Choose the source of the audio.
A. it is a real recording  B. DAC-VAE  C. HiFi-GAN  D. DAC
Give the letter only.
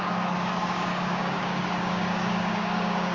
D